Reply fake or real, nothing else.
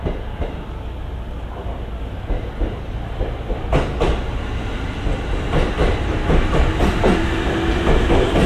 real